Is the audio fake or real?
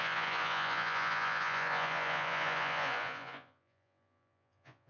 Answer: fake